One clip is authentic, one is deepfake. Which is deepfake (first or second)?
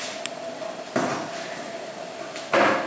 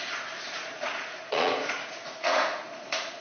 second